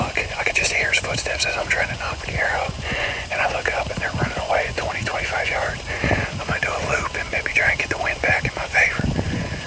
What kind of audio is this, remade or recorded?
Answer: remade